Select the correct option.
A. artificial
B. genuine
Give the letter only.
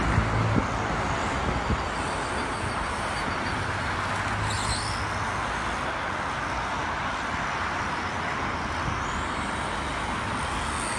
B